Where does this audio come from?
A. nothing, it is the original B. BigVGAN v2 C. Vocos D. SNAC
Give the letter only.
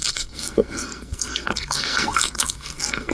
D